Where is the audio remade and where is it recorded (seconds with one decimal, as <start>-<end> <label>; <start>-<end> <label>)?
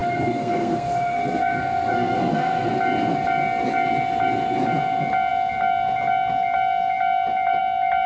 0.0-2.7 remade; 2.7-8.1 recorded